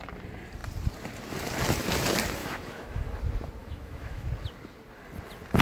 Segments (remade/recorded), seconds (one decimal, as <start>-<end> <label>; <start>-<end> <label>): 0.0-2.4 recorded; 2.4-3.0 remade; 3.0-3.6 recorded; 3.6-4.3 remade; 4.3-5.6 recorded